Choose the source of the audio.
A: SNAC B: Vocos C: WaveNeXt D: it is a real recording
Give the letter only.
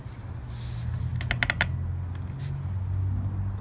D